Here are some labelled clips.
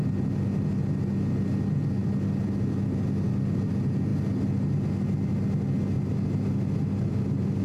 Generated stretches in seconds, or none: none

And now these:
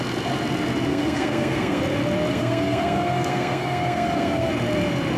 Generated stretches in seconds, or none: 0.9-1.8 (codec, SNAC); 2.3-4.5

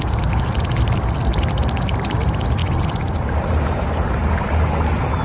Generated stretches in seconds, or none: none